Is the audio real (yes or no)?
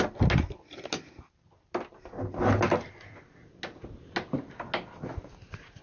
yes